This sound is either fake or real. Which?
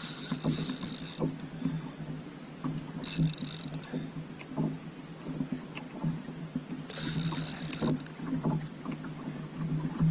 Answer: real